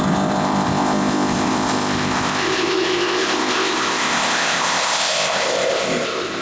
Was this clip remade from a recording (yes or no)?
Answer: yes